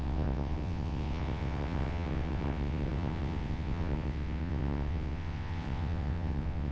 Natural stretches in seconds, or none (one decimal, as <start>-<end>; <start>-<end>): none

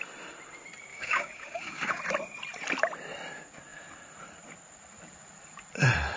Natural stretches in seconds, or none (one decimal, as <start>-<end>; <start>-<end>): 0.0-0.9; 2.0-6.2

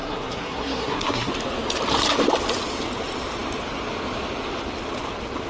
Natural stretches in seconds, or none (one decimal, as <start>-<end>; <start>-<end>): 1.3-5.5

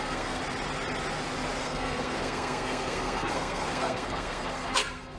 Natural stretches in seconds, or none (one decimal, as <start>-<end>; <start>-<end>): 0.4-1.6